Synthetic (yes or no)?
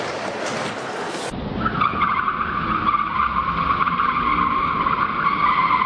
no